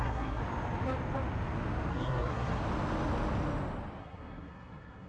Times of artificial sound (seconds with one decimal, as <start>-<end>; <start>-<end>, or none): 0.0-0.4; 1.9-2.6; 4.0-5.1

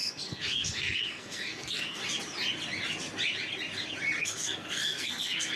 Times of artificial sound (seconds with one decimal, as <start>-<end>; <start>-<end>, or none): 0.0-2.0; 4.2-5.6

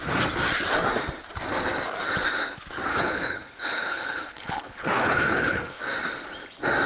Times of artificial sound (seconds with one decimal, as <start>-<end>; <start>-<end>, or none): 2.9-5.8

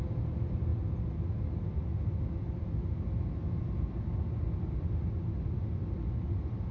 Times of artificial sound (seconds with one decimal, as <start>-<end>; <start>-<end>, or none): none